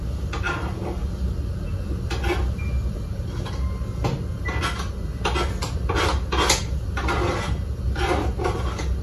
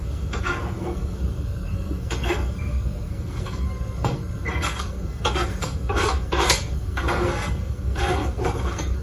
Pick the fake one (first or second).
second